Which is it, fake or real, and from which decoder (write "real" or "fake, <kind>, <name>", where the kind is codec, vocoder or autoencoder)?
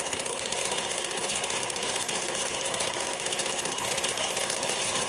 fake, codec, SNAC